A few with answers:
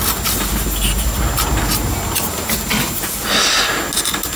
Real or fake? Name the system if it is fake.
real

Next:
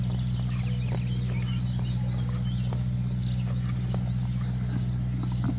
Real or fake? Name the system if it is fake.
real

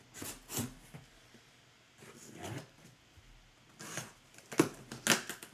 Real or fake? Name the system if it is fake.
real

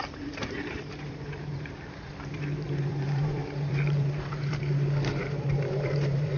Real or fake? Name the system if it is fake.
fake, vocoder, BigVGAN v2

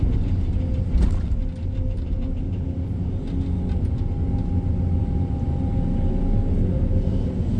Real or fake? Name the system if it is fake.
real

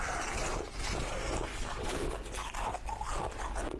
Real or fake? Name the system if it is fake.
real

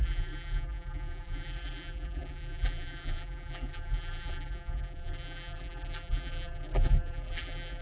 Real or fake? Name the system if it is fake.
fake, vocoder, BigVGAN v2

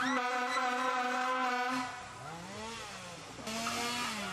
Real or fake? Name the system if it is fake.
real